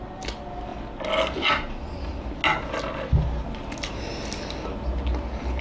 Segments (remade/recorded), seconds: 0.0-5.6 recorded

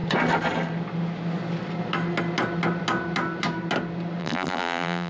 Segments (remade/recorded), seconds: 0.0-4.2 recorded; 4.2-5.1 remade

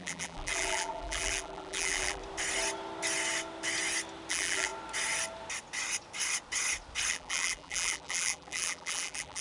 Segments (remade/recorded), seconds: 0.0-2.2 remade; 2.2-4.3 recorded; 4.3-4.7 remade; 4.7-7.1 recorded; 7.1-9.4 remade

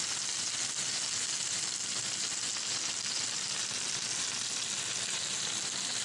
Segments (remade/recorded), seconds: 0.0-6.0 recorded

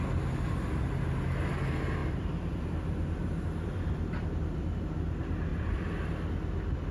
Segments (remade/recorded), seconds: 0.0-2.0 recorded; 2.0-4.9 remade; 4.9-5.5 recorded; 5.5-6.3 remade; 6.3-6.9 recorded

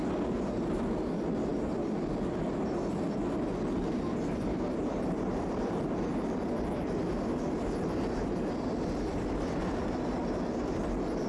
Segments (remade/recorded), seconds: 0.0-1.5 remade; 1.5-3.0 recorded; 3.0-10.2 remade; 10.2-11.3 recorded